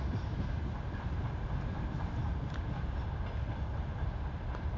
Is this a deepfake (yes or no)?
no